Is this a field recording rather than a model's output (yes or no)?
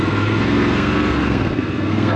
no